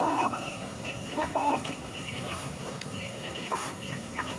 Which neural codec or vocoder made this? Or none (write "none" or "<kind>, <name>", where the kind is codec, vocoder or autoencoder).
codec, SNAC